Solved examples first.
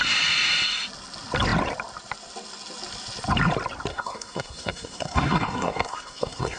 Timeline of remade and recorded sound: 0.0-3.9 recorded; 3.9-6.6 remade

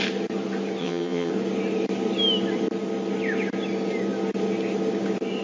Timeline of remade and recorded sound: 0.0-0.8 recorded; 0.8-1.3 remade; 1.3-5.4 recorded

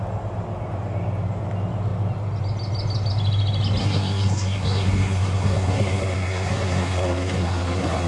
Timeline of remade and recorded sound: 0.0-3.8 recorded; 3.8-8.1 remade

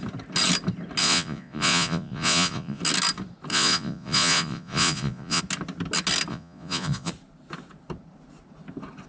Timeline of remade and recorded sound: 0.0-1.0 recorded; 1.0-2.8 remade; 2.8-3.5 recorded; 3.5-5.4 remade; 5.4-6.3 recorded; 6.3-7.1 remade; 7.1-9.1 recorded

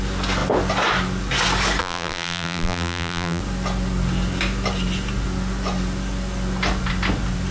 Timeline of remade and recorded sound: 0.0-1.8 recorded; 1.8-3.4 remade; 3.4-7.5 recorded

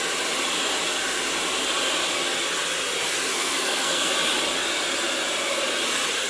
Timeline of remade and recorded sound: 0.0-3.3 recorded; 3.3-4.1 remade; 4.1-6.3 recorded

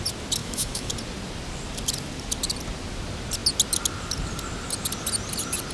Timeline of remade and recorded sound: 0.0-0.4 recorded; 0.4-0.9 remade; 0.9-5.7 recorded